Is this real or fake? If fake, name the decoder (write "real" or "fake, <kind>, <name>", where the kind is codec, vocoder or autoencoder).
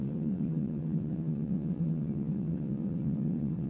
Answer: fake, vocoder, WaveNeXt